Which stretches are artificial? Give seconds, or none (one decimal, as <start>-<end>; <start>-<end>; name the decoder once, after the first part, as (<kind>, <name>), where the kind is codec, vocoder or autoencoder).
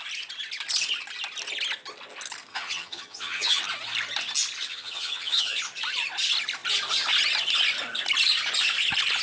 2.5-3.6 (vocoder, HiFi-GAN); 4.7-5.6